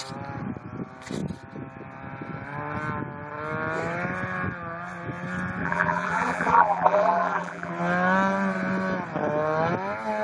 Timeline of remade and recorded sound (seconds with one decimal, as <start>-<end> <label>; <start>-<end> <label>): 0.0-5.6 recorded; 5.6-7.7 remade; 7.7-10.2 recorded